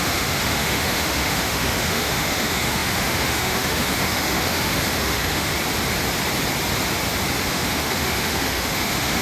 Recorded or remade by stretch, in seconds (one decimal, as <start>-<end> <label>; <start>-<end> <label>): 0.0-5.5 remade; 5.5-7.5 recorded; 7.5-9.2 remade